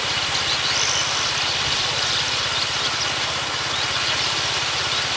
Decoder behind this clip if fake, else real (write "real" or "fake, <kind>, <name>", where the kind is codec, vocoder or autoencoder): fake, vocoder, BigVGAN v2